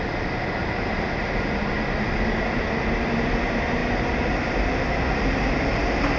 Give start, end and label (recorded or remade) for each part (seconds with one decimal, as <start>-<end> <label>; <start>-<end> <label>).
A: 0.0-6.2 recorded